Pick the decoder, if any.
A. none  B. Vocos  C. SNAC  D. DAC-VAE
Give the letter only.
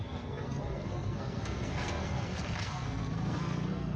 C